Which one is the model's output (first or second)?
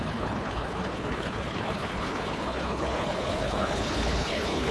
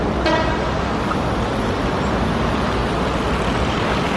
first